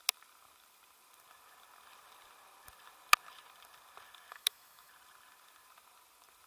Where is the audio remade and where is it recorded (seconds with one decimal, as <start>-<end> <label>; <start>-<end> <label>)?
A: 0.0-4.3 recorded; 4.3-4.9 remade; 4.9-6.5 recorded